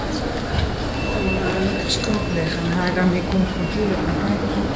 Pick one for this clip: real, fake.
real